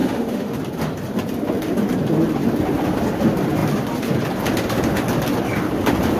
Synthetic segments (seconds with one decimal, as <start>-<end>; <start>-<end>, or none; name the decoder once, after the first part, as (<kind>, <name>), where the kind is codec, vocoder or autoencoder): 0.0-0.6 (autoencoder, DAC-VAE)